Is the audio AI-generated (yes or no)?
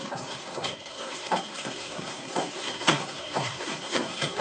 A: yes